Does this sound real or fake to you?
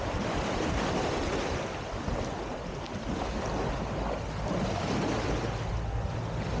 real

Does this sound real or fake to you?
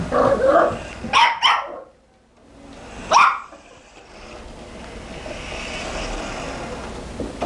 real